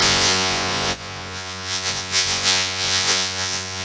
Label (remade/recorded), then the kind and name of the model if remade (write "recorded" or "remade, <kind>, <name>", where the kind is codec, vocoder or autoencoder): remade, vocoder, Vocos